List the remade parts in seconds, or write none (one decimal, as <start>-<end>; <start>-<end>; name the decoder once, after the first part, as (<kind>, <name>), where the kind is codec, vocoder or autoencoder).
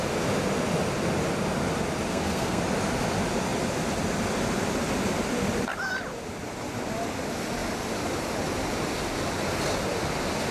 2.1-2.6 (codec, SNAC)